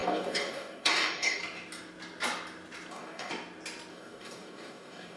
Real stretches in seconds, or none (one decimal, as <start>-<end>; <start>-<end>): 1.4-2.9; 3.3-3.9